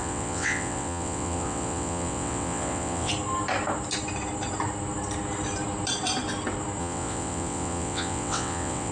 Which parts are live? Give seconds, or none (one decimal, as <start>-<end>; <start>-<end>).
3.1-6.8